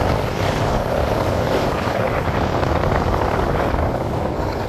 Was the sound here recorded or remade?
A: remade